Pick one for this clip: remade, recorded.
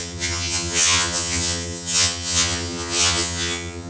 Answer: remade